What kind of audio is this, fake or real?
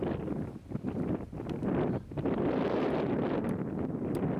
real